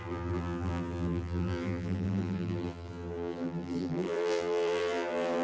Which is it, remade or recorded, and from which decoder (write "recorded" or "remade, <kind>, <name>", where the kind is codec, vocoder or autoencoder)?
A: remade, vocoder, BigVGAN v2